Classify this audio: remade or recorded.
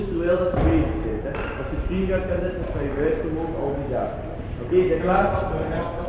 recorded